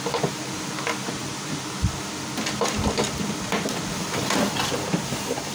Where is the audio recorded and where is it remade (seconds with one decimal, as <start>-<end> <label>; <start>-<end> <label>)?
0.0-5.5 recorded